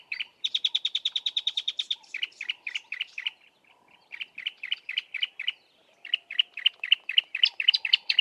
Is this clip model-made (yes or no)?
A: yes